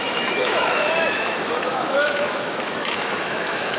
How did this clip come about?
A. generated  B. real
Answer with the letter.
A